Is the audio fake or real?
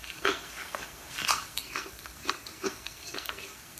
fake